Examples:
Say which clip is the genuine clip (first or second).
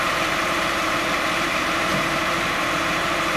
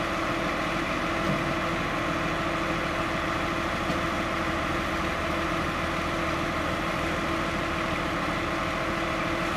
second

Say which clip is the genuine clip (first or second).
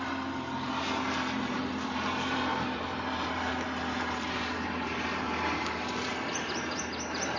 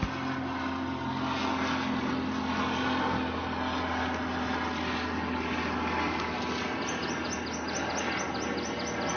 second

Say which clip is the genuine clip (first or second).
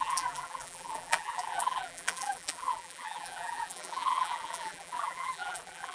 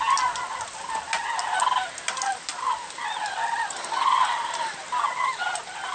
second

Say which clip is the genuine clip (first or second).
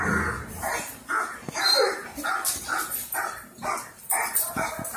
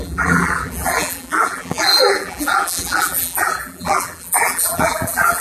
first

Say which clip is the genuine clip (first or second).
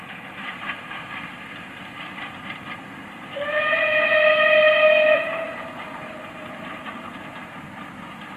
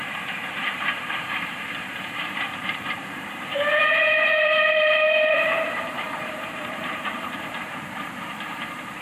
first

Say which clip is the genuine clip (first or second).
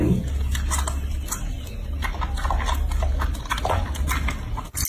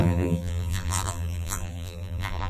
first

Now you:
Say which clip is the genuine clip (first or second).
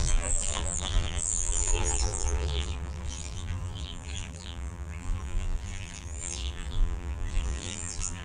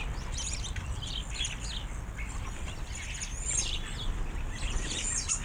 second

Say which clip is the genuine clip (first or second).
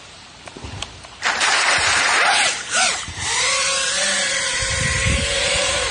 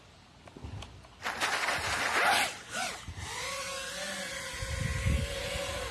second